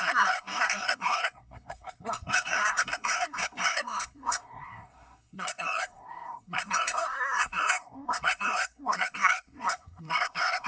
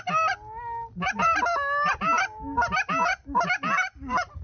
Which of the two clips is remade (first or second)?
first